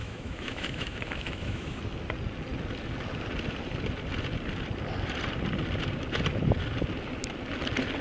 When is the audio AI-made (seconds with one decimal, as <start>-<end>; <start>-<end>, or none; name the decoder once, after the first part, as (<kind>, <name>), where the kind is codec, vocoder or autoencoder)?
0.0-1.8 (autoencoder, DAC-VAE)